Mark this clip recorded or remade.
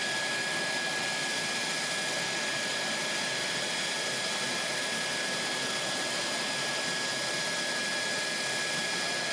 recorded